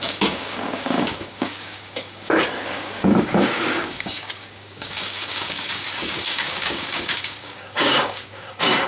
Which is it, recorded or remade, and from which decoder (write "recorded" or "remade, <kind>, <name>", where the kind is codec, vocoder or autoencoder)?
remade, codec, DAC